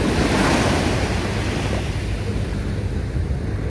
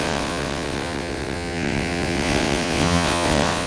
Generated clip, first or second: second